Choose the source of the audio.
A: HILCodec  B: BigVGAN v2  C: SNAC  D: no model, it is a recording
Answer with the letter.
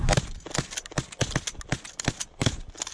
D